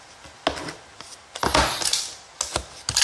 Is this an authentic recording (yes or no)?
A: yes